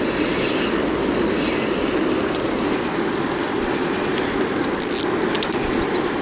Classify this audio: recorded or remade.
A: recorded